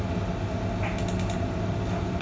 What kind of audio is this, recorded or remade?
recorded